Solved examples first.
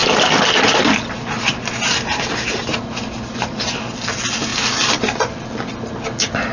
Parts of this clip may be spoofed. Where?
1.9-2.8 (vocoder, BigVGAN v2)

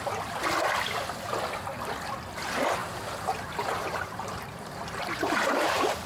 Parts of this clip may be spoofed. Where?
2.8-6.1 (vocoder, BigVGAN v2)

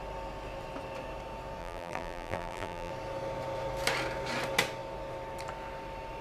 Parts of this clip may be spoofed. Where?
1.6-2.9 (vocoder, BigVGAN v2)

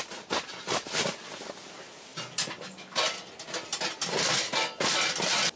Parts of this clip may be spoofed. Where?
none

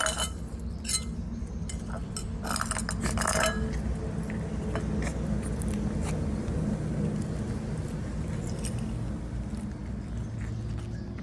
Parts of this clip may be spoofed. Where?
none

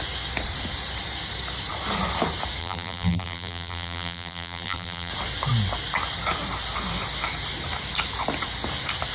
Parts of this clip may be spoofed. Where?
2.6-5.1 (vocoder, BigVGAN v2)